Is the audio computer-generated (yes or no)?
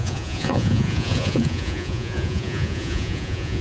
yes